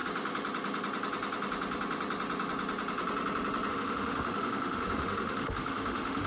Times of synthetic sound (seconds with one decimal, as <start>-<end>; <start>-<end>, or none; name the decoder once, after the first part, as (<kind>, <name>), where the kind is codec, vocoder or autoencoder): 3.7-6.3 (autoencoder, DAC-VAE)